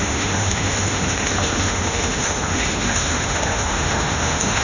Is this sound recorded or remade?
remade